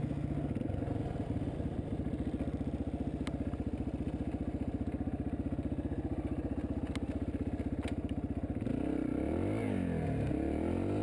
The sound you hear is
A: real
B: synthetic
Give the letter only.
A